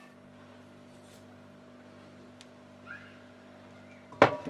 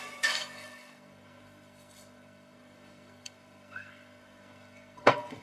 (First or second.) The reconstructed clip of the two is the second